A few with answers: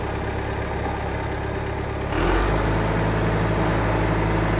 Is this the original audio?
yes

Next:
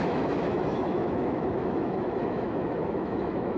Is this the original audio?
no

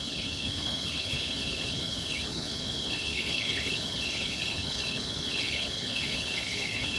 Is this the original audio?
no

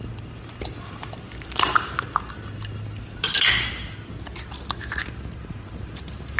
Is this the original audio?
yes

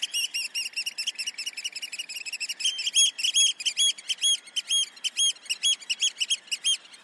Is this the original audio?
yes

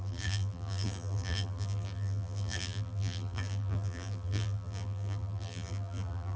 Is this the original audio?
no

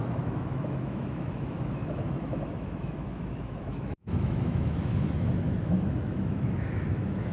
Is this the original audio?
no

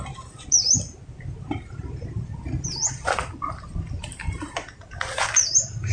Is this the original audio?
yes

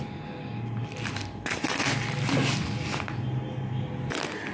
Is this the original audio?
yes